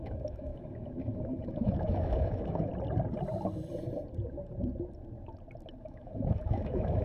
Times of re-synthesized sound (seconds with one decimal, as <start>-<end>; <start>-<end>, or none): 0.0-2.7; 5.8-7.0